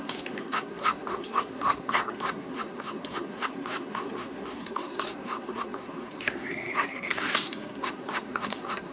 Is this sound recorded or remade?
remade